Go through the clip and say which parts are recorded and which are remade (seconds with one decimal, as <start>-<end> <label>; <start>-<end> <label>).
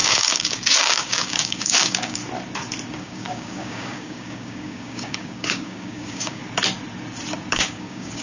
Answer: 0.0-2.2 remade; 2.2-2.9 recorded; 2.9-6.4 remade; 6.4-7.5 recorded; 7.5-8.2 remade